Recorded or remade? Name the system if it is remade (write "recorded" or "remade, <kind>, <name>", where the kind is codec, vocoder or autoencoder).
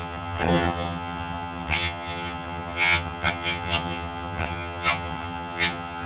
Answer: remade, vocoder, HiFi-GAN